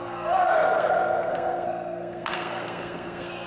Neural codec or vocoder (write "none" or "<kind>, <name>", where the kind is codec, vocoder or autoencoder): codec, SNAC